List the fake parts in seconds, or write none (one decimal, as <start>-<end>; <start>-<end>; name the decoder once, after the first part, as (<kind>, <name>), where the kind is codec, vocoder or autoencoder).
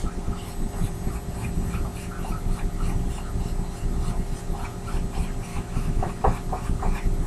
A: 5.5-6.1 (autoencoder, DAC-VAE)